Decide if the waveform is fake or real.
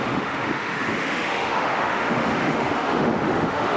fake